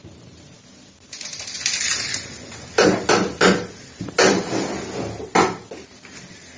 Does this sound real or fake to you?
real